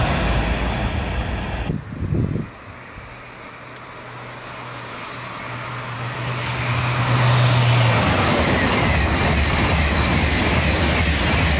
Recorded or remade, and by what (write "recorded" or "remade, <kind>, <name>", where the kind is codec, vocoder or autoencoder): recorded